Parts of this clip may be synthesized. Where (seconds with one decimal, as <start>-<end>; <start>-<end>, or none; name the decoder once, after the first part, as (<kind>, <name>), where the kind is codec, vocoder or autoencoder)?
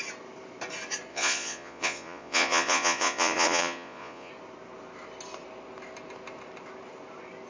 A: 1.1-4.3 (vocoder, Vocos)